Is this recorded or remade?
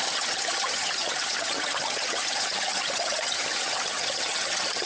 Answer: remade